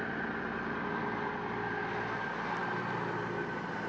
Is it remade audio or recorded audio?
recorded